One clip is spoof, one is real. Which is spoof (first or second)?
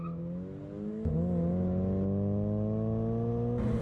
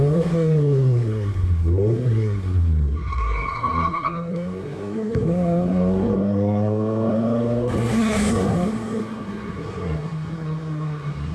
second